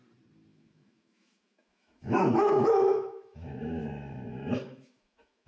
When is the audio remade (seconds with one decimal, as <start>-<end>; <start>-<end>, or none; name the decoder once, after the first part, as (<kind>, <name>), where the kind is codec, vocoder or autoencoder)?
0.5-3.8 (autoencoder, DAC-VAE); 4.3-5.5